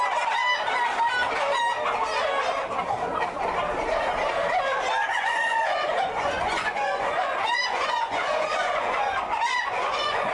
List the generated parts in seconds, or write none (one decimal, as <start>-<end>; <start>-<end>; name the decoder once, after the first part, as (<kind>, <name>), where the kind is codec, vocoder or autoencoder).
5.1-10.3 (vocoder, Vocos)